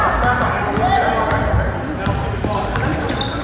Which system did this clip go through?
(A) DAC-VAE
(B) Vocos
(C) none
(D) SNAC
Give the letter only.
C